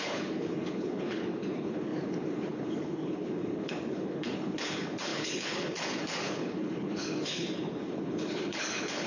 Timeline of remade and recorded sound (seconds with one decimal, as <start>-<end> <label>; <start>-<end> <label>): 0.0-9.1 remade